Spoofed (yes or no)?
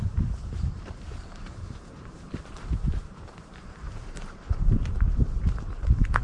yes